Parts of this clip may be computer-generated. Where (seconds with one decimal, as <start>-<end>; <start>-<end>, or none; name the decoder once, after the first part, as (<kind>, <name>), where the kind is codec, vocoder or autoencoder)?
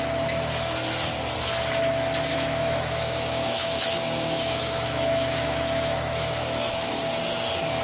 2.3-7.0 (autoencoder, DAC-VAE)